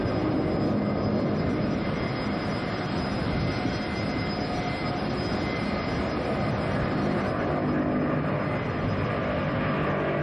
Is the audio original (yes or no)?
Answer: yes